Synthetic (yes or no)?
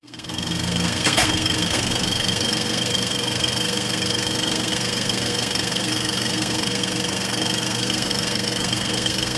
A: yes